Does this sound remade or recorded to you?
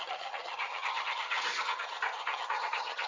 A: remade